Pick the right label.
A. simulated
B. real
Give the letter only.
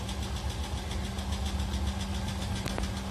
B